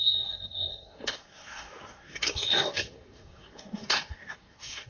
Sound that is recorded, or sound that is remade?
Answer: remade